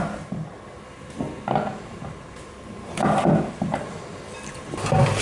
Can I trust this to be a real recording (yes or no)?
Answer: yes